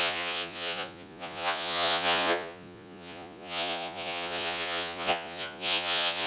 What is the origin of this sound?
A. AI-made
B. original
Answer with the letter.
A